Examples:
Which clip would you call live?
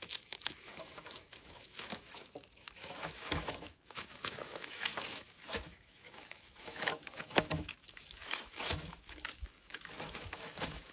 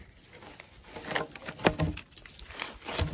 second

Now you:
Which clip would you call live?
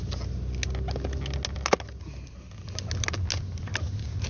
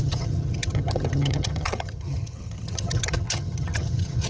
first